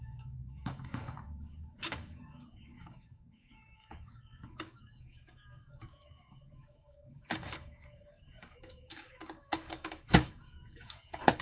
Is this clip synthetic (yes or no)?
yes